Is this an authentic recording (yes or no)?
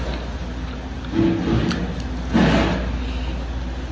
yes